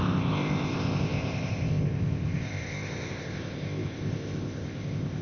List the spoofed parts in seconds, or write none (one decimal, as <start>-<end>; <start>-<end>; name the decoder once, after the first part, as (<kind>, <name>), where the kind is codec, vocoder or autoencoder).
0.0-5.2 (codec, ZipCodec)